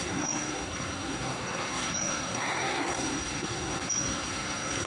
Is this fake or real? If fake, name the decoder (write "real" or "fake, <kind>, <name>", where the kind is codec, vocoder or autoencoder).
fake, codec, SNAC